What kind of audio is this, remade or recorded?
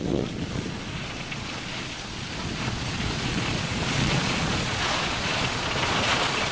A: remade